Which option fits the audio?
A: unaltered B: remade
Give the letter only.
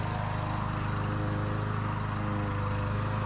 A